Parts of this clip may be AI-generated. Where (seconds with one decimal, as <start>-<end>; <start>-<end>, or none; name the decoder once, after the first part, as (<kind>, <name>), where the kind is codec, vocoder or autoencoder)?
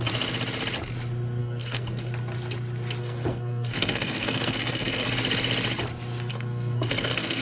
1.4-2.1 (codec, SNAC); 3.0-5.1; 6.3-7.4